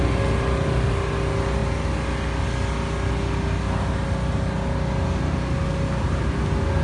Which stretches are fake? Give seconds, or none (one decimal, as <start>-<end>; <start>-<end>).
none